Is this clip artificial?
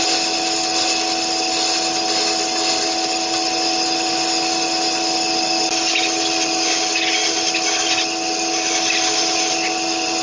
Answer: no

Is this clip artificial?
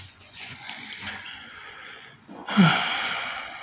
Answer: yes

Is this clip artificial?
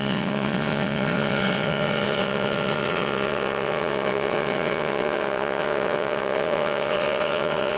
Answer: yes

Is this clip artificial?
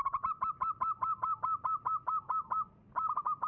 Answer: no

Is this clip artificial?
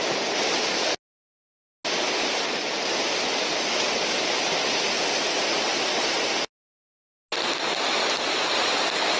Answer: no